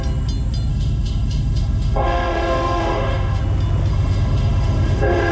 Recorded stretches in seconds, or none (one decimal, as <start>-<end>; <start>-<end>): 0.0-0.7; 3.4-3.9